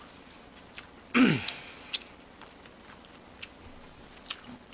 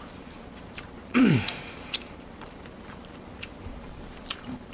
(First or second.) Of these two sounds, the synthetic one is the second